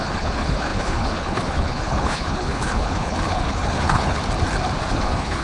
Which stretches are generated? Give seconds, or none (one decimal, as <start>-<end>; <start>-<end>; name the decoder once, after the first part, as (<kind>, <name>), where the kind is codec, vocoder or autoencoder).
0.0-4.2 (codec, HILCodec); 4.9-5.4